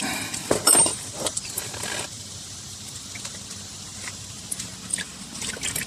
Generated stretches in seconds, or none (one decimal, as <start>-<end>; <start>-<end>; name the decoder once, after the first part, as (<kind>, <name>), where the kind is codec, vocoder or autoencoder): 0.9-1.7 (vocoder, BigVGAN v2); 4.9-5.5

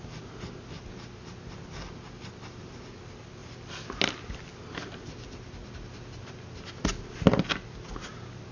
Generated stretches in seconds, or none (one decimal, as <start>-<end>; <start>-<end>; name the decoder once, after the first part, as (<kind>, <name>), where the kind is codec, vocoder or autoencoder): none

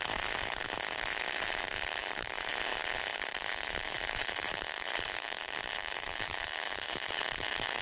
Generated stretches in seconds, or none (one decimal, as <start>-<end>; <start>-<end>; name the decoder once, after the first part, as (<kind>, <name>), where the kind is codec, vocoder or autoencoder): 2.0-2.5 (vocoder, BigVGAN v2); 3.1-7.1

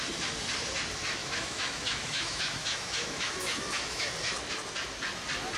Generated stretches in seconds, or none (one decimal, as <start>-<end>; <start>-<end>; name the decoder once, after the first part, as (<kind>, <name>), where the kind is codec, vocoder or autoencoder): 1.2-4.1 (autoencoder, DAC-VAE)

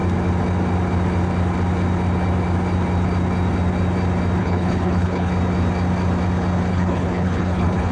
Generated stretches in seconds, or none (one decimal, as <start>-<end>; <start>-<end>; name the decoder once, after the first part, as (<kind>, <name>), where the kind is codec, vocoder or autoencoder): 4.4-5.3 (codec, HILCodec); 6.7-7.9

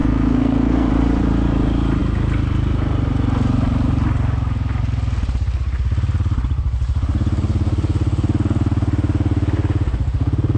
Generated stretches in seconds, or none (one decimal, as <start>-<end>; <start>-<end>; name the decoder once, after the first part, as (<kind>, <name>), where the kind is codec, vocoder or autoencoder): 0.0-0.9 (codec, SNAC)

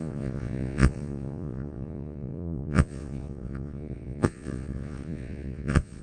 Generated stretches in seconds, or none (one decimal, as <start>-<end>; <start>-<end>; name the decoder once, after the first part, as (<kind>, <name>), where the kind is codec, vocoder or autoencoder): 0.0-6.0 (vocoder, Vocos)